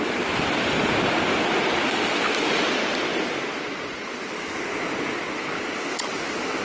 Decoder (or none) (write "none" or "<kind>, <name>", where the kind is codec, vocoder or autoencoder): none